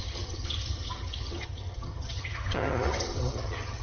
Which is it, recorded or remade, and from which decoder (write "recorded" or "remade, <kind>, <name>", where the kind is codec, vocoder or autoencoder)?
remade, vocoder, HiFi-GAN